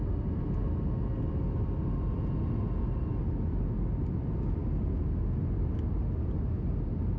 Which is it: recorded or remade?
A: recorded